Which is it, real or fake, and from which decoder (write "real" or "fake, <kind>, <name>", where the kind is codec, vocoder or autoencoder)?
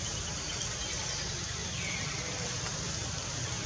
real